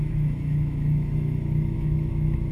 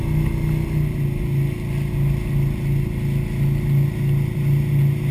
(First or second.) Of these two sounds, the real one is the second